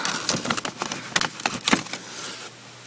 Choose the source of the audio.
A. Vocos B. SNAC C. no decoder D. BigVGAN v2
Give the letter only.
C